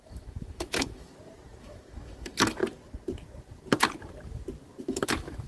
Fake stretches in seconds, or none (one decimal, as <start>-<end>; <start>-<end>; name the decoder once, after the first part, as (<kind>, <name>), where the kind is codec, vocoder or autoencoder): 0.0-1.1 (autoencoder, DAC-VAE); 1.6-2.6; 4.8-5.5